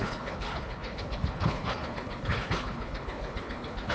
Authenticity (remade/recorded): remade